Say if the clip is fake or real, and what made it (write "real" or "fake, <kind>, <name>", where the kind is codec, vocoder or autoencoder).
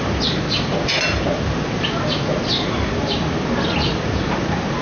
real